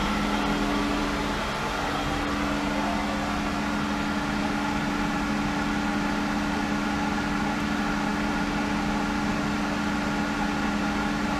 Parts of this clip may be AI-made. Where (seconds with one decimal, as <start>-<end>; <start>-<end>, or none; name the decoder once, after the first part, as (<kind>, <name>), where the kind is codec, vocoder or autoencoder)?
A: none